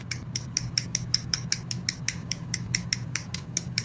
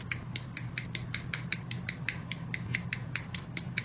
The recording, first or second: second